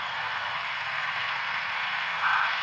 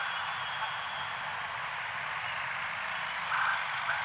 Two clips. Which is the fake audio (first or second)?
first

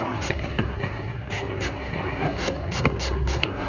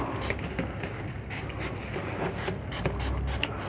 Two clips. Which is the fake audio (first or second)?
first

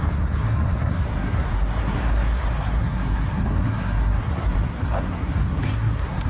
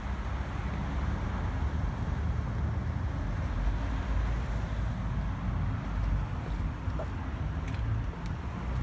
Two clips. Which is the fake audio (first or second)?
first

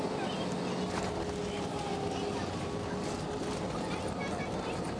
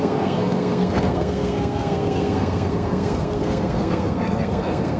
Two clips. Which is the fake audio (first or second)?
second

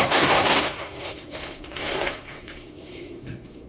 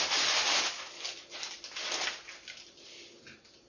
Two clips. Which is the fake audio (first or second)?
first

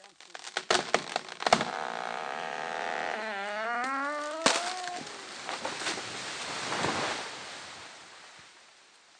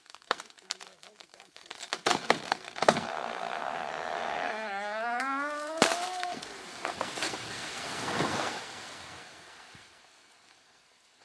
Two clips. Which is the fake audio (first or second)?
second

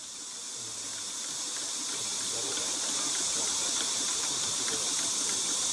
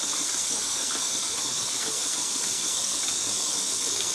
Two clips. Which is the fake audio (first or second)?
second